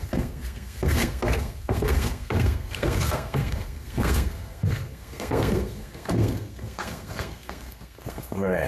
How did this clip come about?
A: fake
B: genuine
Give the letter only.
A